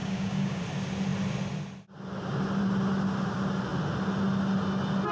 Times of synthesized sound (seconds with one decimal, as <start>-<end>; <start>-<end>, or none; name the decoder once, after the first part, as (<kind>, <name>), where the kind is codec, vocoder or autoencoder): 0.0-0.6 (codec, DAC)